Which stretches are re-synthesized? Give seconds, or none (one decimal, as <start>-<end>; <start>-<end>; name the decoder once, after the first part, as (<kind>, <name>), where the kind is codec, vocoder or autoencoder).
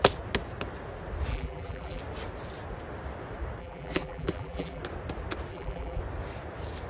1.3-2.0 (vocoder, BigVGAN v2); 3.6-4.8; 5.5-6.0